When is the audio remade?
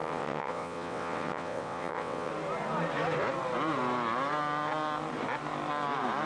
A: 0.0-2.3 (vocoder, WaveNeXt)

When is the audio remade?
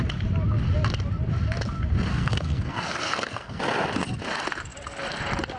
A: 2.1-3.6 (codec, SNAC)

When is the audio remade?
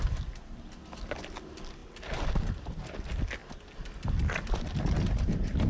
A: none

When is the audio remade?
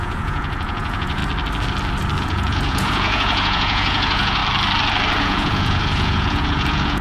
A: 0.0-1.2 (vocoder, Vocos); 2.2-4.4; 5.2-7.0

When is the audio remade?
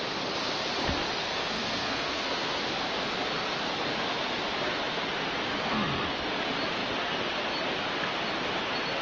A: 1.2-2.6 (codec, SNAC); 5.5-6.3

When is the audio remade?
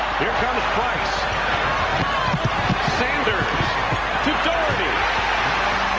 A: none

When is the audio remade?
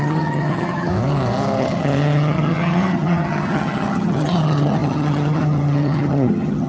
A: 0.0-0.9 (vocoder, HiFi-GAN); 1.6-6.7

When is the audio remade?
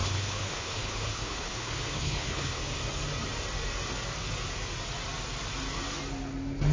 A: 0.0-2.6 (codec, HILCodec)